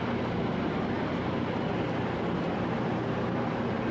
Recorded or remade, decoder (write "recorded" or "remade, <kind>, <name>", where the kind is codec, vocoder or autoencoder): recorded